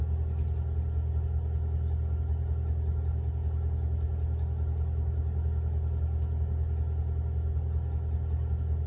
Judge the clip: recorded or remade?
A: recorded